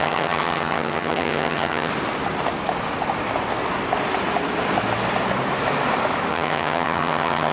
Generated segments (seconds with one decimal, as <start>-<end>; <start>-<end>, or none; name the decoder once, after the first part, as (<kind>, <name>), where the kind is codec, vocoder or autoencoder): 0.0-1.9 (vocoder, HiFi-GAN); 6.3-7.5